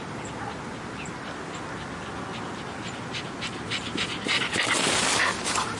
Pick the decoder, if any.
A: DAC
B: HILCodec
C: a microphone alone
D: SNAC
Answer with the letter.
C